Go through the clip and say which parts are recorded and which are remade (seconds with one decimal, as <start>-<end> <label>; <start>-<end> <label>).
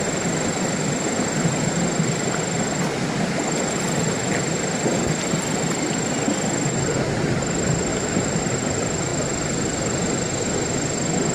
0.0-7.9 recorded; 7.9-8.4 remade; 8.4-11.3 recorded